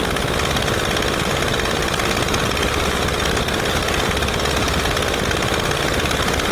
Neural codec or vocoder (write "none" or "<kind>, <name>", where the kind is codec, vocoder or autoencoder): none